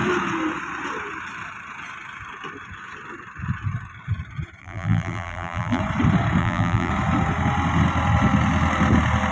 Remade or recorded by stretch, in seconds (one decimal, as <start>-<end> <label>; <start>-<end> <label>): 0.0-4.6 recorded; 4.6-5.8 remade; 5.8-6.4 recorded; 6.4-6.9 remade; 6.9-9.3 recorded